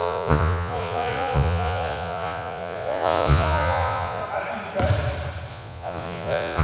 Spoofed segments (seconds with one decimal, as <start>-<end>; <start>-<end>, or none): 0.0-4.2; 5.5-6.6

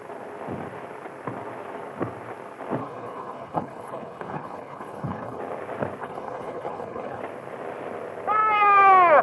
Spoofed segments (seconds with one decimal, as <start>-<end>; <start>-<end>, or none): 2.8-5.4; 6.0-7.2

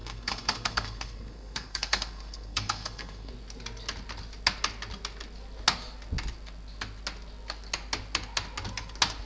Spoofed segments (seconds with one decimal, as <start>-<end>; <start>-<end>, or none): 0.0-3.3

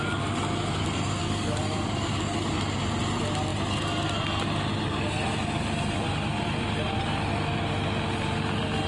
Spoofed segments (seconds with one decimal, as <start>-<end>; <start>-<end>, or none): 1.2-2.5

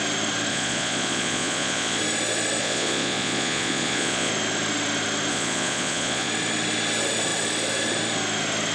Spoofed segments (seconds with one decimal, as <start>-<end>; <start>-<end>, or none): 0.5-2.0; 2.6-4.3; 5.3-6.3

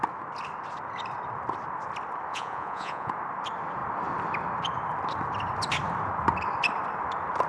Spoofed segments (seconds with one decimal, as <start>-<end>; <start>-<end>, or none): 2.3-3.1

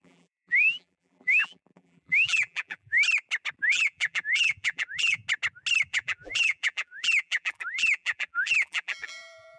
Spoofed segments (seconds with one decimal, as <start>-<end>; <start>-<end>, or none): 0.0-3.0; 3.7-5.2; 5.9-9.6